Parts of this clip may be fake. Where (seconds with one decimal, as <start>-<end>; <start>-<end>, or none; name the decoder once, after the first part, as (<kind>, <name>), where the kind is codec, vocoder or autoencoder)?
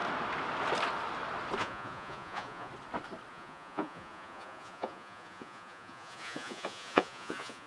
1.6-2.7 (vocoder, Vocos); 3.3-7.7